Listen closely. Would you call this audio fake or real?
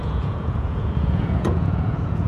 fake